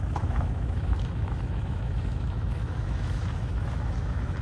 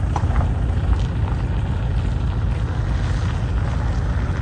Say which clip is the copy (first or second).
first